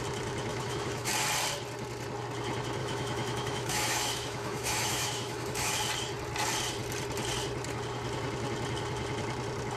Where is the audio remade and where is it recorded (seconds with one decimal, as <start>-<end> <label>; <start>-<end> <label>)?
0.0-0.5 recorded; 0.5-1.1 remade; 1.1-2.8 recorded; 2.8-5.7 remade; 5.7-9.8 recorded